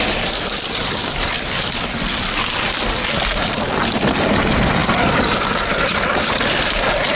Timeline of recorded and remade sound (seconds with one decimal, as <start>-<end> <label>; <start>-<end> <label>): 0.0-7.1 recorded